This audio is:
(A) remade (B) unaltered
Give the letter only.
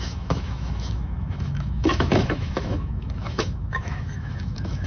A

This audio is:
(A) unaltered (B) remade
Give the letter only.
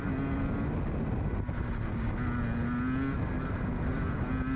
A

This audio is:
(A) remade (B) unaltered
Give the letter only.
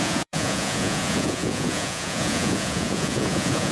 A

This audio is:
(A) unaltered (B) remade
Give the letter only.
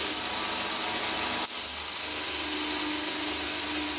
A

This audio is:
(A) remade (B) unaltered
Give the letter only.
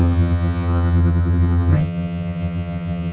A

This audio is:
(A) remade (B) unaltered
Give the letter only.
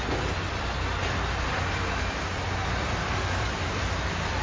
B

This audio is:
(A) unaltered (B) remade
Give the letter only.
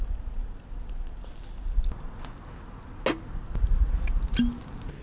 A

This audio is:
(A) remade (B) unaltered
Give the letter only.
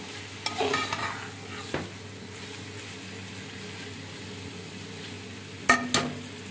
B